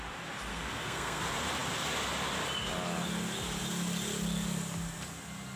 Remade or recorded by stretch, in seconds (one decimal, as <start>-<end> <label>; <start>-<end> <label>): 0.0-0.5 recorded; 0.5-1.2 remade; 1.2-5.6 recorded